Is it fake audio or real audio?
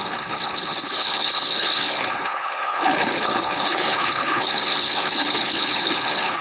fake